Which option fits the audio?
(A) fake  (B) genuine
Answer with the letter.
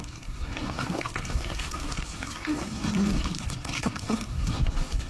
A